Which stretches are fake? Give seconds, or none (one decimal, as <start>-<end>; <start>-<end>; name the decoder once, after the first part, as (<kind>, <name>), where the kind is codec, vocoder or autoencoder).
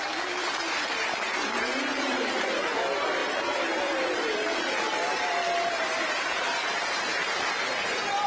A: 0.0-8.3 (vocoder, BigVGAN v2)